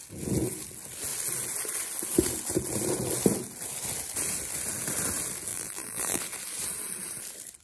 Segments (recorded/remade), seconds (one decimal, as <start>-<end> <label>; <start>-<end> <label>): 0.0-5.5 recorded; 5.5-6.2 remade; 6.2-7.6 recorded